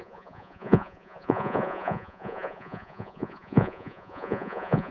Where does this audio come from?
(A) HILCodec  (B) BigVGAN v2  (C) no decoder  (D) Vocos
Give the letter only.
D